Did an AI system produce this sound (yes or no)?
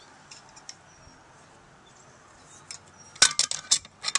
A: no